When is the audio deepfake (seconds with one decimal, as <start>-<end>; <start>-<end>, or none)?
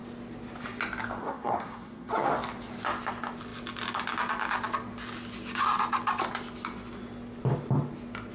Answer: 1.2-2.1